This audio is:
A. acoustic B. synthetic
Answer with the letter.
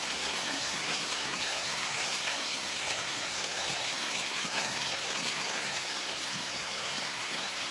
B